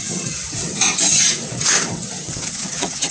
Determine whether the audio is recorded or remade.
remade